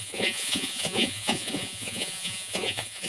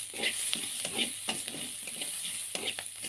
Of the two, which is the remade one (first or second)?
first